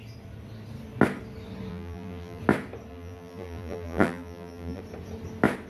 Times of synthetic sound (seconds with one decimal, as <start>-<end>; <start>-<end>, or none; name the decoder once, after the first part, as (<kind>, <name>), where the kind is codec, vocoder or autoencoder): 1.7-2.4 (vocoder, BigVGAN v2); 2.9-4.8